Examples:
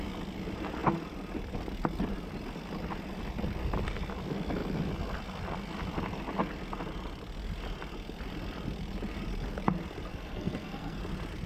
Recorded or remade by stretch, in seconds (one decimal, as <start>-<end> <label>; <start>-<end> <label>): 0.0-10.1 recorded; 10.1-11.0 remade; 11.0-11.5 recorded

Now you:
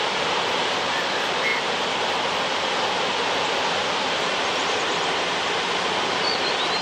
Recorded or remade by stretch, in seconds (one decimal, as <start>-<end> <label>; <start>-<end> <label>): 0.0-1.5 remade; 1.5-4.1 recorded; 4.1-6.8 remade

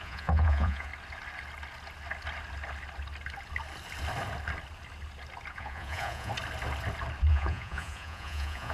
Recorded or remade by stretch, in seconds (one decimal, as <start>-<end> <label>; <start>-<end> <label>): 0.0-0.9 remade; 0.9-5.5 recorded; 5.5-6.3 remade; 6.3-7.3 recorded; 7.3-8.7 remade